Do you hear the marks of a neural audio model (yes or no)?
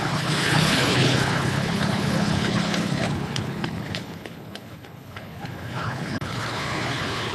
yes